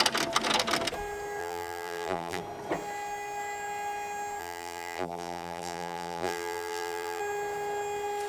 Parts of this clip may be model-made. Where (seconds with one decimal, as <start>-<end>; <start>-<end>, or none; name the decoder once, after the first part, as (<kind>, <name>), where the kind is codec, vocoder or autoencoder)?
1.4-2.4 (vocoder, BigVGAN v2); 4.4-7.2